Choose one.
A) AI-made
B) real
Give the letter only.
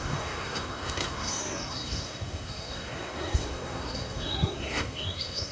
A